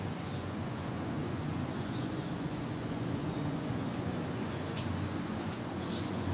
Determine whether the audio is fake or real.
fake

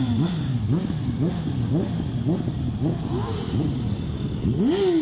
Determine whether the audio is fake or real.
real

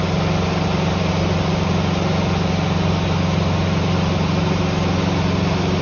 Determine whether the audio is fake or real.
real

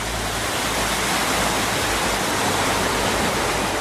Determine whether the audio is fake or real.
real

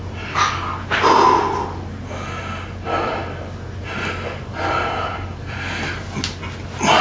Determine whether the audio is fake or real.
real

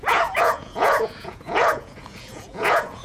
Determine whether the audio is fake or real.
fake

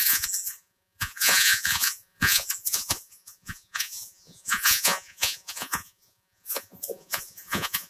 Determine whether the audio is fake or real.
fake